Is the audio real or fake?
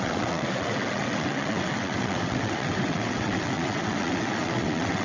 fake